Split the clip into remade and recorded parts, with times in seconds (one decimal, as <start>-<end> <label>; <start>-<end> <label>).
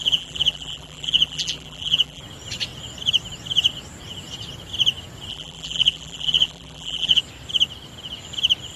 0.0-2.2 remade; 2.2-5.3 recorded; 5.3-7.2 remade; 7.2-8.8 recorded